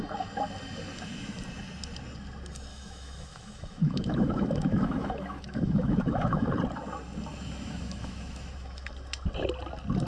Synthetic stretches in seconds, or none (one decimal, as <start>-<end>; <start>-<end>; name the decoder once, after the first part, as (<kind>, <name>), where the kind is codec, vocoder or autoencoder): 2.7-6.5 (autoencoder, DAC-VAE); 7.3-8.9